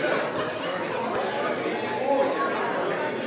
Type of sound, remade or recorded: recorded